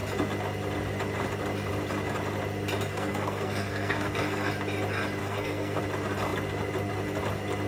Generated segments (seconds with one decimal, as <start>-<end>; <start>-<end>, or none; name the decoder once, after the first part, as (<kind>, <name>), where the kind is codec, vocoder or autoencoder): 2.9-4.5 (codec, SNAC); 5.2-5.8